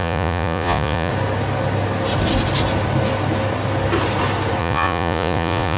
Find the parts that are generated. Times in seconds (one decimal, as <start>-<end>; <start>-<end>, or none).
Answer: 0.0-1.1; 4.6-5.8